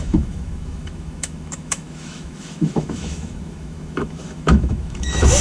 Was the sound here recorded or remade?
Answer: remade